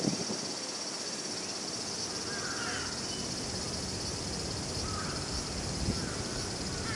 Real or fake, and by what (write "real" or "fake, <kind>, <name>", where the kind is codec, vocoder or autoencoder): real